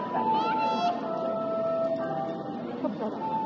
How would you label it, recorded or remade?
recorded